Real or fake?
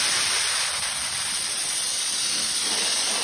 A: real